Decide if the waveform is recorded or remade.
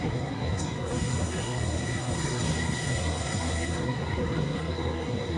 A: remade